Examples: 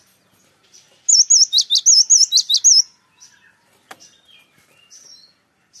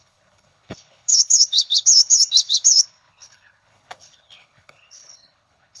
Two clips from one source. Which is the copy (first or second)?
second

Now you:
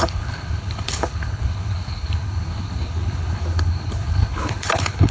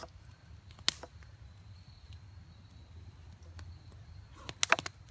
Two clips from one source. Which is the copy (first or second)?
first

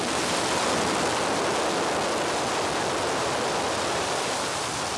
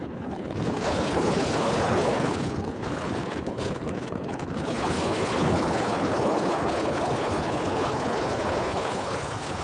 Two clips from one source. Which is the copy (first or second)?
second